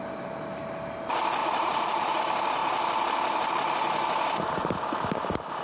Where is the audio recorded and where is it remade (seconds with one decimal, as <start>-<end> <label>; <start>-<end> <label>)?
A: 0.0-1.4 recorded; 1.4-2.2 remade; 2.2-5.6 recorded

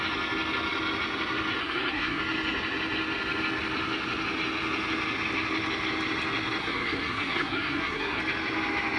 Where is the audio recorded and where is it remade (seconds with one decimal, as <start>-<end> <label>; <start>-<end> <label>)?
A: 0.0-1.6 recorded; 1.6-2.2 remade; 2.2-6.6 recorded; 6.6-8.2 remade; 8.2-9.0 recorded

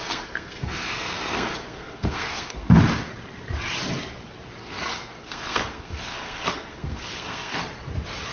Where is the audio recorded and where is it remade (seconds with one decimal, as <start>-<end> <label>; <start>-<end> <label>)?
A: 0.0-2.8 remade; 2.8-4.6 recorded; 4.6-7.6 remade; 7.6-8.3 recorded

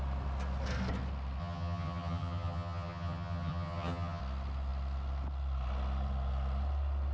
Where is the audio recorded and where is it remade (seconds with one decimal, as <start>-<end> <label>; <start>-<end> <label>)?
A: 0.0-1.4 recorded; 1.4-4.2 remade; 4.2-7.1 recorded